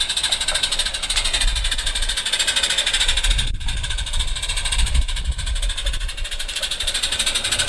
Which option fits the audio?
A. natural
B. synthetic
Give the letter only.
A